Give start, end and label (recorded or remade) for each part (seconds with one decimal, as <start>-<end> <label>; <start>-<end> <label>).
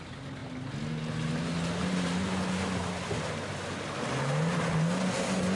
0.0-5.5 recorded